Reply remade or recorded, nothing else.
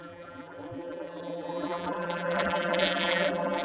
remade